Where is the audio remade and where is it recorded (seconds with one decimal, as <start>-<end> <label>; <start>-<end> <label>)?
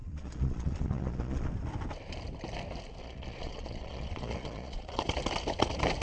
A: 0.0-1.5 remade; 1.5-3.0 recorded; 3.0-5.0 remade; 5.0-6.0 recorded